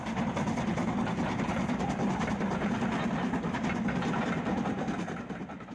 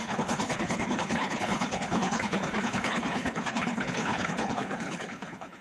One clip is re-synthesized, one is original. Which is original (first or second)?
first